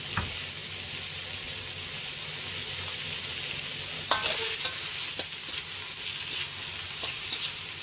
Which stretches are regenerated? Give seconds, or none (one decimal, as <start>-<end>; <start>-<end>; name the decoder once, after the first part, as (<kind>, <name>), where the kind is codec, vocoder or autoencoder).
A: none